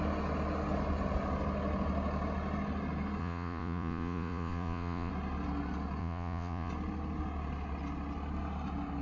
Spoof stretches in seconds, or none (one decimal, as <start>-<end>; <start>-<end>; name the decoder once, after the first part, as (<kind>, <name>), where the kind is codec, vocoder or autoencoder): 3.2-5.1 (vocoder, Vocos); 6.0-6.7